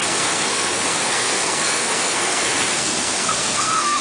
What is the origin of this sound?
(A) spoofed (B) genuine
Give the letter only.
A